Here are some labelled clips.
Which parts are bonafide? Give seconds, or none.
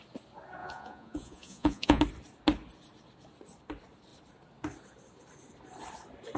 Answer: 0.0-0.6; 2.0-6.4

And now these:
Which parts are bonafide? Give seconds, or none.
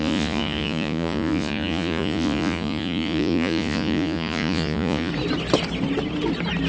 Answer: 5.1-6.7